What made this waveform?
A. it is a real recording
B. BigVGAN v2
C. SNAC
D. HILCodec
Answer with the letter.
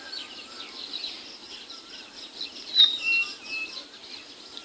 A